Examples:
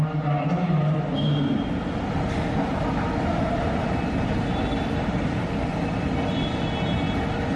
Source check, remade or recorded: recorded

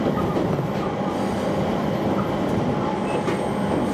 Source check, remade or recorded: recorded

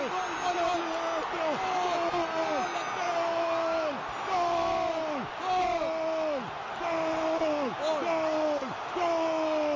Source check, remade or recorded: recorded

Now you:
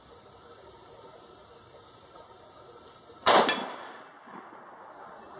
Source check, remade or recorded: recorded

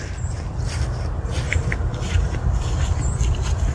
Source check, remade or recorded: recorded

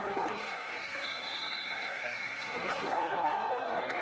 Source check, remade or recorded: remade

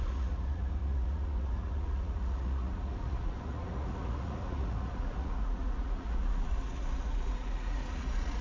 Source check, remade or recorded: remade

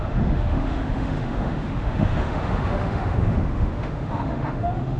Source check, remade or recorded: remade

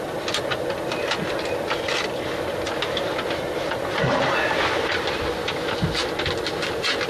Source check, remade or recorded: recorded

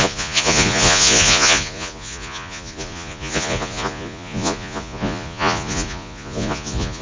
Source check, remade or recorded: remade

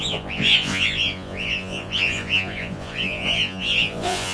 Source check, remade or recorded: remade